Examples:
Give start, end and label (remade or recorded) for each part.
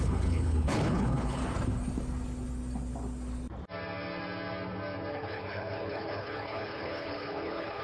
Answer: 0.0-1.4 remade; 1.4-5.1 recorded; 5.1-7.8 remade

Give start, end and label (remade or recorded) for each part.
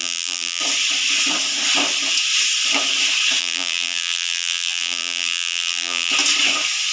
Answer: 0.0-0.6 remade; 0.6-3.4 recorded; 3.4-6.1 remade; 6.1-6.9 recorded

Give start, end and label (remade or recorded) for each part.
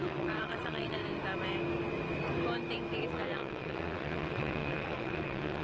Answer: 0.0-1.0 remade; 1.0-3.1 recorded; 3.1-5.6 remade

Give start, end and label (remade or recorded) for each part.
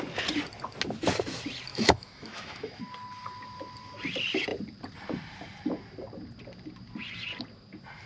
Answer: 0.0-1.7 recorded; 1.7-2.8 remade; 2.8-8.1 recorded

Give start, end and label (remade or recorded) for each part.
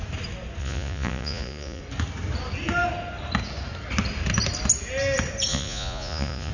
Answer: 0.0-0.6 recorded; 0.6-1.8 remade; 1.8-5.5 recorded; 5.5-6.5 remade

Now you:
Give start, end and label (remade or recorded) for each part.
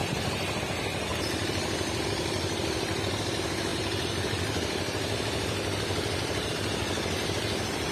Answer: 0.0-0.6 remade; 0.6-1.1 recorded; 1.1-3.1 remade; 3.1-3.7 recorded; 3.7-6.5 remade; 6.5-7.9 recorded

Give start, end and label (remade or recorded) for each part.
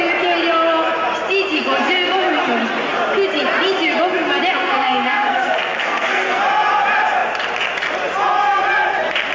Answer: 0.0-4.6 recorded; 4.6-6.4 remade; 6.4-9.3 recorded